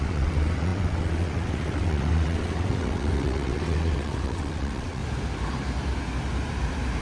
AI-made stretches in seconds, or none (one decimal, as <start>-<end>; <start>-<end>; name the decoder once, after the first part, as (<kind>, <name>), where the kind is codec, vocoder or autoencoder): 0.0-5.0 (vocoder, WaveNeXt)